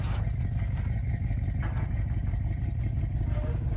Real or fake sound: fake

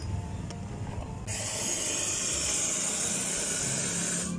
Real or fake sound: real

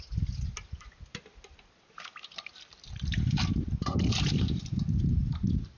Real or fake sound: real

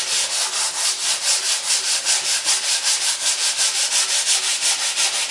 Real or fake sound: real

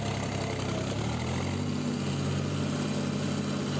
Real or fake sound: real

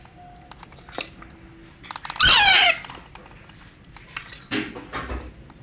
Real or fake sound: real